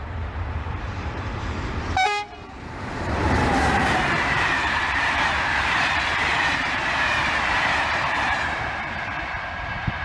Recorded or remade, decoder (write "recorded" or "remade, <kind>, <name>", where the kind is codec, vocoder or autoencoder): remade, vocoder, BigVGAN v2